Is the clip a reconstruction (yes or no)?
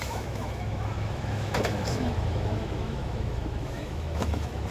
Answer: yes